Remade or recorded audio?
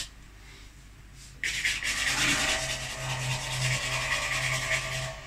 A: recorded